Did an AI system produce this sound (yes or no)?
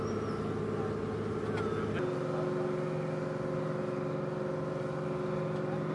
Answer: no